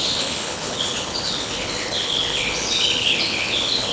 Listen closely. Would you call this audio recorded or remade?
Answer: remade